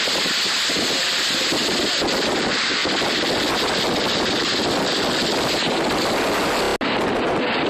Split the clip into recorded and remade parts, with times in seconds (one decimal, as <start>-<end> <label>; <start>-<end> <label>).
0.0-0.5 recorded; 0.5-2.3 remade; 2.3-7.7 recorded